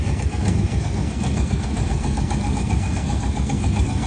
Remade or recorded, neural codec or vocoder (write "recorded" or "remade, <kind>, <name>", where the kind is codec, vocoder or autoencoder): remade, codec, SNAC